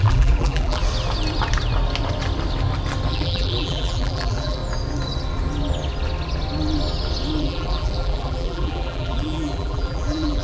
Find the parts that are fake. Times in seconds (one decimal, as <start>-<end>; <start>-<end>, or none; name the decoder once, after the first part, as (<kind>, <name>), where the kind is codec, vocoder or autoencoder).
0.0-0.8 (vocoder, BigVGAN v2); 3.1-4.6; 7.4-10.4